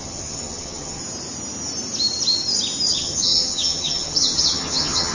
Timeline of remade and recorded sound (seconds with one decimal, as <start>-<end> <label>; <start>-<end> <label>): 0.0-1.0 remade; 1.0-2.9 recorded; 2.9-5.1 remade